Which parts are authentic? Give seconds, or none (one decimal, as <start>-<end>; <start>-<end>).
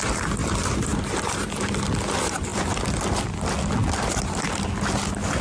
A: 0.0-5.4